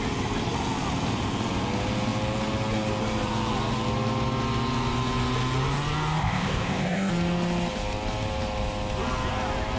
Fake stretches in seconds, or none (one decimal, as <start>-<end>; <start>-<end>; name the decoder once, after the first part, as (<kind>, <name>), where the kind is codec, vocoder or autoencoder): 6.2-7.1 (codec, ZipCodec)